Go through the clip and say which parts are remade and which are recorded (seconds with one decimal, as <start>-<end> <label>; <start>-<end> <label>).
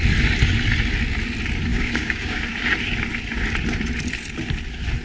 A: 0.0-1.7 recorded; 1.7-2.4 remade; 2.4-5.0 recorded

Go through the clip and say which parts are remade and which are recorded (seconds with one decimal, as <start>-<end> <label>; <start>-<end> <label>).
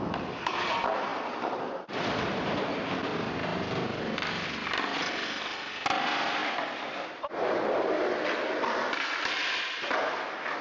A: 0.0-10.6 recorded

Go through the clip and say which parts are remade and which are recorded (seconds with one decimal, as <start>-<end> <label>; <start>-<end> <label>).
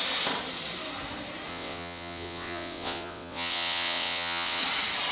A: 0.0-1.5 recorded; 1.5-4.6 remade; 4.6-5.1 recorded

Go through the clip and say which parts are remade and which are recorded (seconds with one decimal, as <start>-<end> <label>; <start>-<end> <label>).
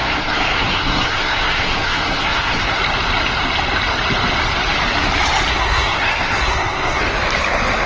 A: 0.0-2.8 remade; 2.8-5.5 recorded; 5.5-7.0 remade; 7.0-7.9 recorded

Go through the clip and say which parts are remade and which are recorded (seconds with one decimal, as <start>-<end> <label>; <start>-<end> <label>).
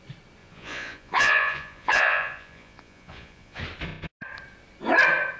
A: 0.0-0.4 recorded; 0.4-3.6 remade; 3.6-5.4 recorded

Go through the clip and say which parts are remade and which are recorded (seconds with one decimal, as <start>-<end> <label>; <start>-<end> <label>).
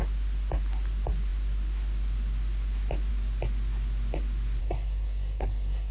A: 0.0-4.6 recorded; 4.6-5.9 remade